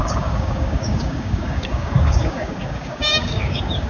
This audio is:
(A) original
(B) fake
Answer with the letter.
B